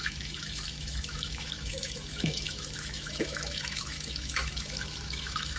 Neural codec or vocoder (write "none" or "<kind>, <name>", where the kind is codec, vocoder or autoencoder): autoencoder, DAC-VAE